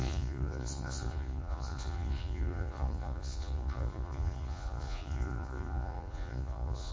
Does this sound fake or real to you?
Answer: fake